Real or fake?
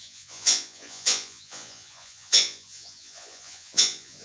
fake